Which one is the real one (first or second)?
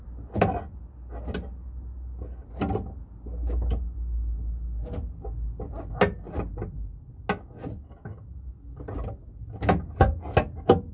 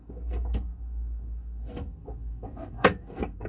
first